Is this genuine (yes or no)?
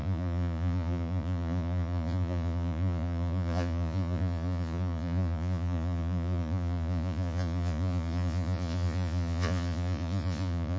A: no